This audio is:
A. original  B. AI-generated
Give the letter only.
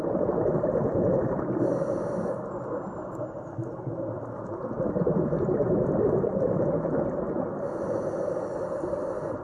A